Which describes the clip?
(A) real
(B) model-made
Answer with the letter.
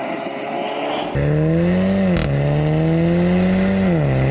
A